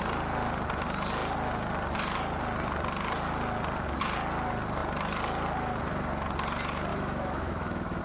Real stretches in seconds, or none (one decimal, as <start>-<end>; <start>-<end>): 0.0-6.9